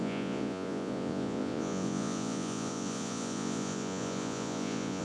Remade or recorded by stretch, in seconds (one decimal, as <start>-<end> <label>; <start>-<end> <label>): 0.0-5.0 remade